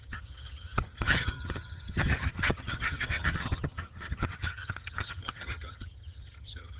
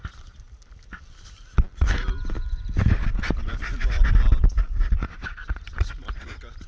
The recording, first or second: second